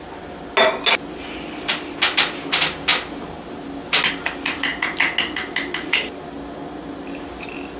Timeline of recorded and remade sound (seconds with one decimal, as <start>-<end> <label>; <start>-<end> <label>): 0.0-7.8 recorded